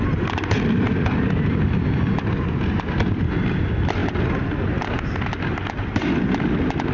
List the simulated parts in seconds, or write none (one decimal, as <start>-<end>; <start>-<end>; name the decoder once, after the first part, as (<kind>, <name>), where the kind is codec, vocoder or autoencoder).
none